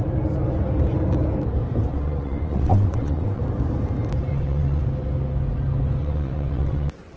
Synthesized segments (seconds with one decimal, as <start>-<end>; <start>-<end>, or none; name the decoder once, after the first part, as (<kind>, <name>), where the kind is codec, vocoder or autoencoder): 1.9-3.4 (vocoder, WaveNeXt); 4.3-4.8; 6.0-7.2